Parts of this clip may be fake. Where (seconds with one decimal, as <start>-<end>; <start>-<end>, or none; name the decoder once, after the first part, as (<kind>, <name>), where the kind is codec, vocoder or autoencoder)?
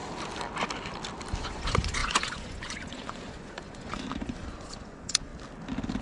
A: 1.4-5.3 (vocoder, Vocos)